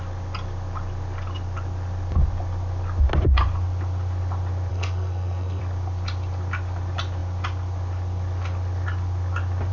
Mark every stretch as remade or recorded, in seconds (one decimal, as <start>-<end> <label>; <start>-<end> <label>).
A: 0.0-4.7 recorded; 4.7-5.6 remade; 5.6-9.7 recorded